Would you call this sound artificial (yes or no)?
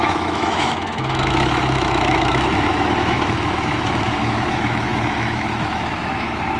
yes